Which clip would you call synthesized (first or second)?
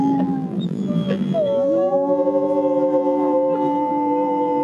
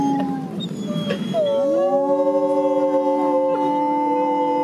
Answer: first